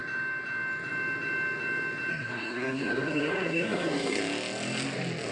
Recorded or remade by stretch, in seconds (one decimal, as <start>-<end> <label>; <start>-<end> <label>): 0.0-2.1 recorded; 2.1-4.2 remade; 4.2-5.3 recorded